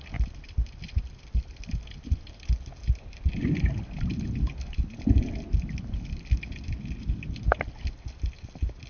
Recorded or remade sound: recorded